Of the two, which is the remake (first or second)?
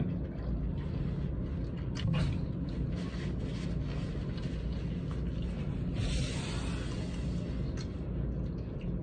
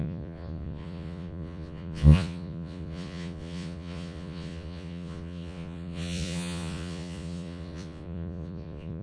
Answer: second